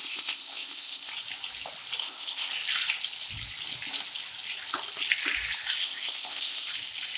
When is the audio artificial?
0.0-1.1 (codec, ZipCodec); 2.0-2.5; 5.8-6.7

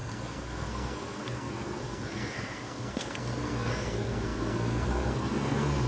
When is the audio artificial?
0.0-5.9 (codec, SNAC)

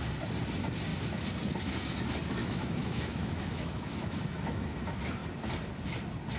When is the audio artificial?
2.4-4.8 (autoencoder, DAC-VAE)

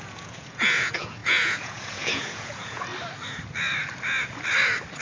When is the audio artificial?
0.0-2.9 (vocoder, Vocos)

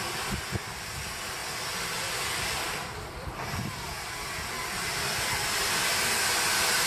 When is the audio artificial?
1.4-5.5 (vocoder, BigVGAN v2)

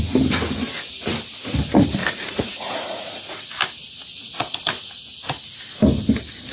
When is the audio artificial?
2.0-3.5 (vocoder, Vocos); 4.1-4.9